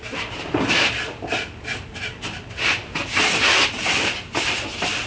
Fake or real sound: real